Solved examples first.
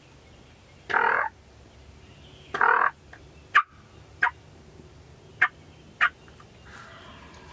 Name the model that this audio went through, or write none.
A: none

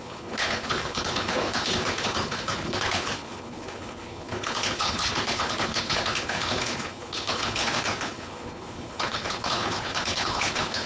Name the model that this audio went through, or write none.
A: codec, HILCodec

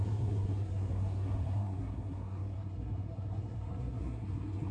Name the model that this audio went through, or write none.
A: codec, SNAC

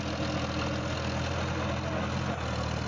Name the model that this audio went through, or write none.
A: none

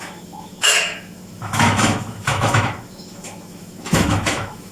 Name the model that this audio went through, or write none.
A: autoencoder, DAC-VAE